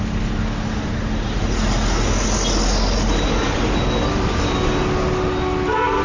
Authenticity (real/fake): real